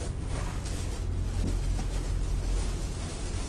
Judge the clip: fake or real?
real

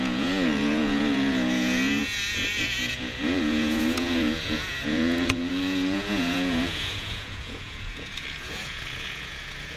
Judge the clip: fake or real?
fake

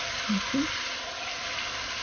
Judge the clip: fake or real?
real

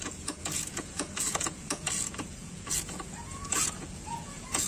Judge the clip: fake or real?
fake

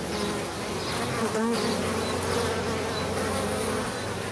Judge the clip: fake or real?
real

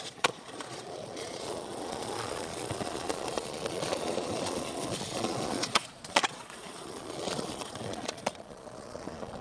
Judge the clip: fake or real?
fake